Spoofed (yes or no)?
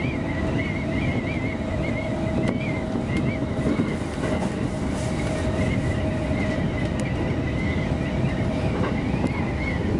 no